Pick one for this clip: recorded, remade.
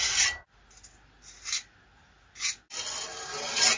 recorded